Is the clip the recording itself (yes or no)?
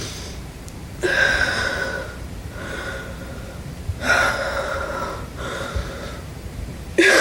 no